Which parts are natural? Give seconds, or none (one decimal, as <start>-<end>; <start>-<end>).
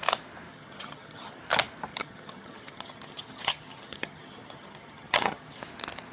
0.0-0.5; 1.4-1.9; 5.6-6.1